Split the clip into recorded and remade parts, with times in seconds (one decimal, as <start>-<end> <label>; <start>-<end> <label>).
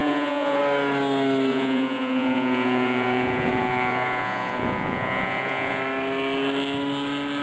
0.0-0.6 remade; 0.6-1.5 recorded; 1.5-5.8 remade; 5.8-7.4 recorded